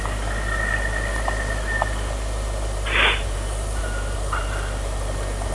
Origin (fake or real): real